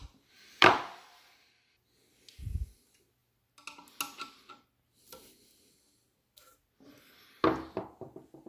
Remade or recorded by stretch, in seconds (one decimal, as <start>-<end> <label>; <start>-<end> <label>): 0.0-0.8 remade; 0.8-8.5 recorded